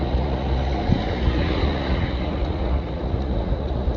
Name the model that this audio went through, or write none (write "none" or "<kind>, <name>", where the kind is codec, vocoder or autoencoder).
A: vocoder, Vocos